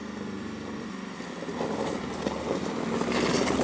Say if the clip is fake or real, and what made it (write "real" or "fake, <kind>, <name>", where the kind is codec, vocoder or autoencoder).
real